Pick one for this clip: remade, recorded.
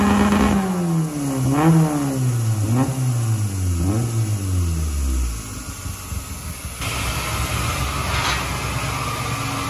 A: recorded